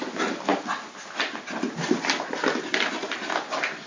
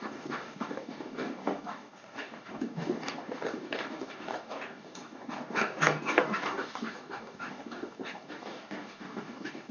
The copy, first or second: second